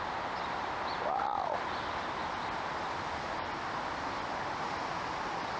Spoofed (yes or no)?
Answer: no